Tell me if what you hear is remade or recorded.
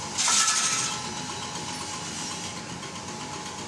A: recorded